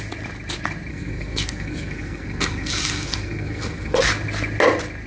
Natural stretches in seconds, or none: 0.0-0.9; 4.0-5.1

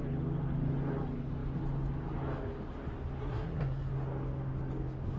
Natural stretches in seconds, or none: 0.0-3.2; 3.9-5.2